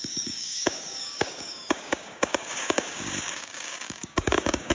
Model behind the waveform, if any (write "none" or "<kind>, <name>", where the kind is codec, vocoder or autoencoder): codec, DAC